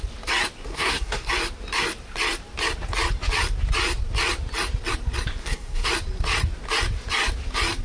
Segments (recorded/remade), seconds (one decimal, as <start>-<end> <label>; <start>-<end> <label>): 0.0-0.7 recorded; 0.7-1.3 remade; 1.3-5.4 recorded; 5.4-5.9 remade; 5.9-7.8 recorded